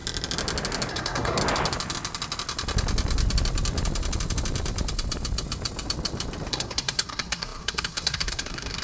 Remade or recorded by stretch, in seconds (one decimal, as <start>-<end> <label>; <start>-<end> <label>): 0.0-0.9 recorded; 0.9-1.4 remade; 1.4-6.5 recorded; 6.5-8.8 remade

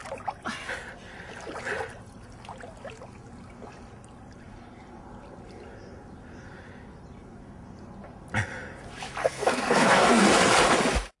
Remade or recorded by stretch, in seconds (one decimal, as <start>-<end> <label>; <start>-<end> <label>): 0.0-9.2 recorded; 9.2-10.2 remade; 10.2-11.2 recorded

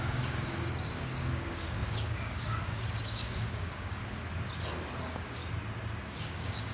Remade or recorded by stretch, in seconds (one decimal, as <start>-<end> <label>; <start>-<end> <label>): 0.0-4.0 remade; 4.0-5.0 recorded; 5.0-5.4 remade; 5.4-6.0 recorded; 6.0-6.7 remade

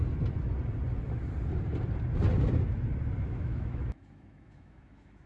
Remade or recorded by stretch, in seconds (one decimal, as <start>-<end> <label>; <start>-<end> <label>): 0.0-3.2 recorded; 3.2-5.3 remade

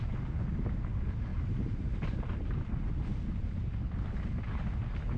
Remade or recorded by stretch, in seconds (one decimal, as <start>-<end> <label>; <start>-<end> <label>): 0.0-5.2 recorded